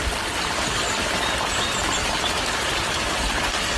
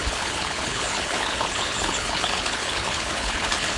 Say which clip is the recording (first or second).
first